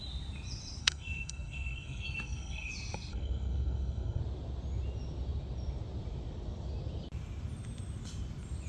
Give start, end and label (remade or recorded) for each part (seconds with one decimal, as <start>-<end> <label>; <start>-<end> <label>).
0.0-0.8 recorded; 0.8-2.7 remade; 2.7-3.1 recorded; 3.1-4.2 remade; 4.2-8.7 recorded